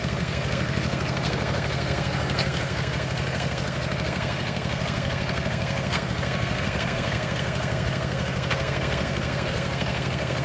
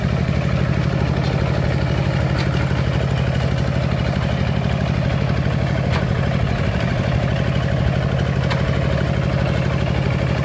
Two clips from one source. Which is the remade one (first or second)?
first